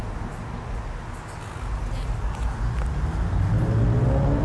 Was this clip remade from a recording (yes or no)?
no